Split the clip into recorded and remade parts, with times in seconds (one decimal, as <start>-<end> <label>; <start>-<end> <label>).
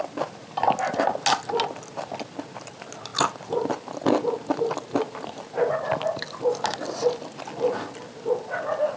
0.0-9.0 recorded